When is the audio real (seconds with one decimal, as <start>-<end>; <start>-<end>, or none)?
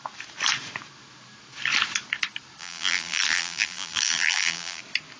0.0-2.6; 4.8-5.2